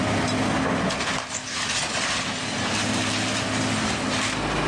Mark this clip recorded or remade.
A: recorded